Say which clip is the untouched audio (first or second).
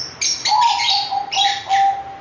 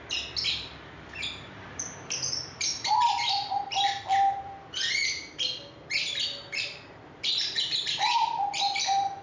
first